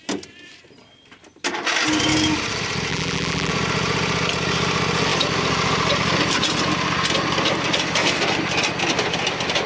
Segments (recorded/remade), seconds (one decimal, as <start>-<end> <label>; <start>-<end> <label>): 0.0-2.9 recorded; 2.9-3.5 remade; 3.5-9.7 recorded